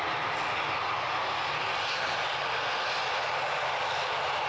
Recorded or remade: recorded